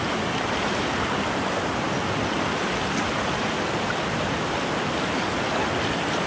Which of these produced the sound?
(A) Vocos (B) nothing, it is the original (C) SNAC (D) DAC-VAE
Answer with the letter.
B